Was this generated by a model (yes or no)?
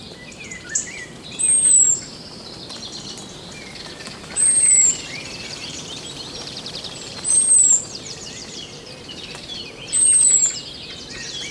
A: yes